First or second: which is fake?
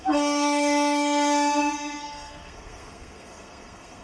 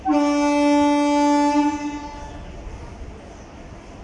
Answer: first